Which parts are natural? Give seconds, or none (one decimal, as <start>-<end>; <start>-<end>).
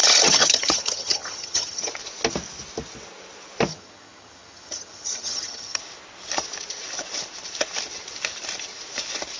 1.9-3.7; 5.8-9.4